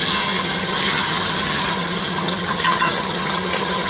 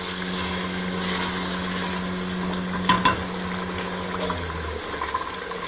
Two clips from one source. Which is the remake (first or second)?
first